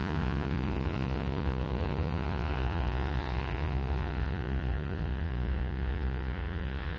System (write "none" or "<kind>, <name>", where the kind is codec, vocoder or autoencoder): vocoder, Vocos